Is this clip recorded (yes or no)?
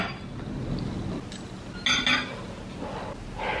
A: yes